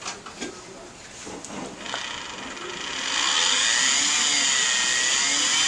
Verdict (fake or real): real